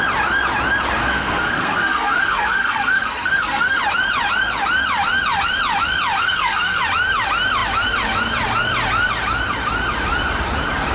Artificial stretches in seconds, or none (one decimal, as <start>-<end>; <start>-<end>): 1.0-3.8; 6.2-6.8